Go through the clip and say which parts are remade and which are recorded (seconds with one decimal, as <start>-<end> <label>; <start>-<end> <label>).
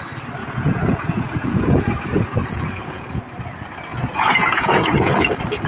0.0-0.4 recorded; 0.4-3.2 remade; 3.2-3.9 recorded; 3.9-5.1 remade; 5.1-5.7 recorded